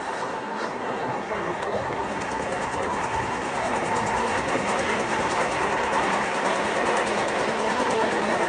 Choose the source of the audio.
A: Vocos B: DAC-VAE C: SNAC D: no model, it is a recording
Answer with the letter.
C